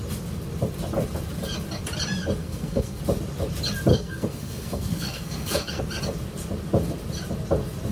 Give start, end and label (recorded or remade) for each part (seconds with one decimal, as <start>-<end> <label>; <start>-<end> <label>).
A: 0.0-2.4 recorded; 2.4-3.0 remade; 3.0-3.9 recorded; 3.9-5.8 remade; 5.8-7.9 recorded